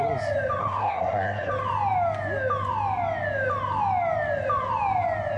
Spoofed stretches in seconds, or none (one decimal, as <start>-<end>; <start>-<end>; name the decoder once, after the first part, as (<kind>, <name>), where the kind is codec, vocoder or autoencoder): 0.6-1.5 (codec, SNAC)